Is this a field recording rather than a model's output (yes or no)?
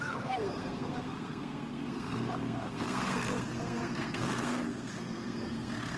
no